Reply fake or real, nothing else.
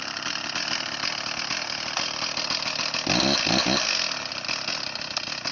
real